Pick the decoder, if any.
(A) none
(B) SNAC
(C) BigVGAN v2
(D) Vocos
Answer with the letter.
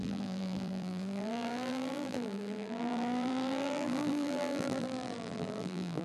C